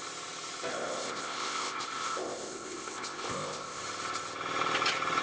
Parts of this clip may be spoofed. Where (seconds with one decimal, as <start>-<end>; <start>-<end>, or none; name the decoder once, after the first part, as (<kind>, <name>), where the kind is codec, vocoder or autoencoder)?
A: 0.7-3.8 (codec, ZipCodec)